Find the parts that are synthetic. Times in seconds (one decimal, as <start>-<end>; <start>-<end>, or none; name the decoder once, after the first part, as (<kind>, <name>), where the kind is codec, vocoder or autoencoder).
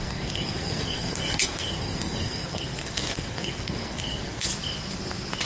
0.0-4.5 (codec, SNAC)